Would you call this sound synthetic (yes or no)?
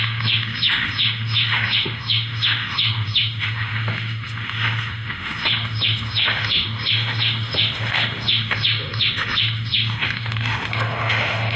yes